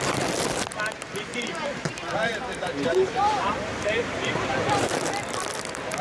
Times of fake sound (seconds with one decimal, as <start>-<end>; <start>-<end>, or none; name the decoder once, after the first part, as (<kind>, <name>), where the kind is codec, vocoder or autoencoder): 1.3-4.9 (vocoder, BigVGAN v2)